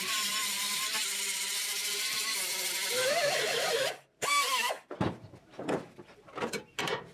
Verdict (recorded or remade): remade